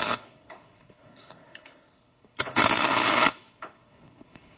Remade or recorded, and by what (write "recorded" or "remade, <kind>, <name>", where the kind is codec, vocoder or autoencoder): remade, codec, HILCodec